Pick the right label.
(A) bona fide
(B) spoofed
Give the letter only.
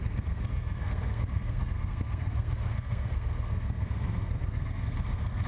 B